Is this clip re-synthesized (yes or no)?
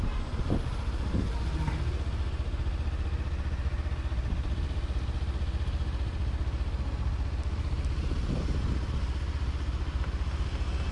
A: no